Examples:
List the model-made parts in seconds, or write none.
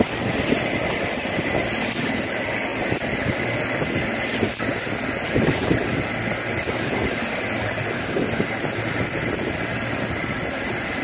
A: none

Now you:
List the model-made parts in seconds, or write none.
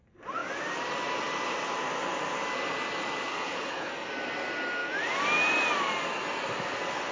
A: 3.3-3.9 (codec, HILCodec)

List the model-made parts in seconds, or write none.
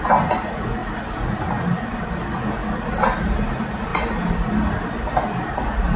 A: none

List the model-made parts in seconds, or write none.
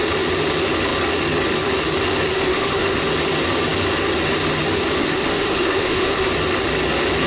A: 2.3-3.0 (autoencoder, DAC-VAE); 5.0-6.3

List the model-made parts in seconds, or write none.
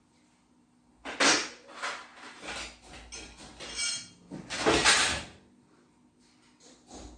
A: none